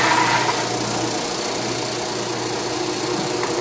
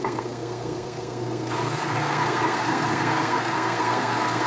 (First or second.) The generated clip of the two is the second